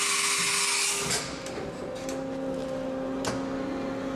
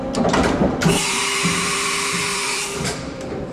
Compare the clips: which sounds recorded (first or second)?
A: first